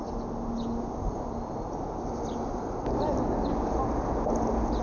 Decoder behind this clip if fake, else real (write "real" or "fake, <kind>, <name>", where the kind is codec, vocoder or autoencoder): real